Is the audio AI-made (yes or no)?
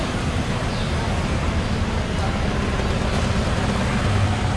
no